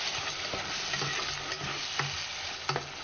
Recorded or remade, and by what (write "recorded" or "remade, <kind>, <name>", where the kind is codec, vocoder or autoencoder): recorded